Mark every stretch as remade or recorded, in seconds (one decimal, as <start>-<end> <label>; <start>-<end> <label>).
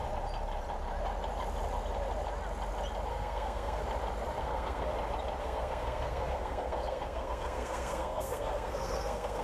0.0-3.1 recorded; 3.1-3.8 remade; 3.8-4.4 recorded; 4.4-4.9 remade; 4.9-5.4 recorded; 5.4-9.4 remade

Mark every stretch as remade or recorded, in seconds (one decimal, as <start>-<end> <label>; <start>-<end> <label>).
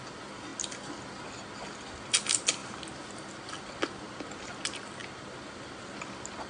0.0-6.5 recorded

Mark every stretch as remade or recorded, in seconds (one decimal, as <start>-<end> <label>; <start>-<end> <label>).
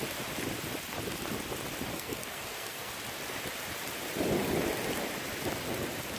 0.0-1.9 recorded; 1.9-2.9 remade; 2.9-6.2 recorded